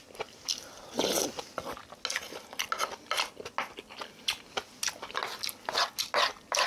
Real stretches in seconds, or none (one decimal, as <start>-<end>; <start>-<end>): 0.0-6.7